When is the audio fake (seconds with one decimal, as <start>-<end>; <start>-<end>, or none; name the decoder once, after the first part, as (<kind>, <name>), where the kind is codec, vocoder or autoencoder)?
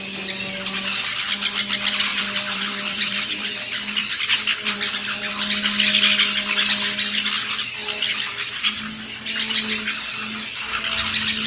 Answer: 2.1-5.3 (vocoder, BigVGAN v2)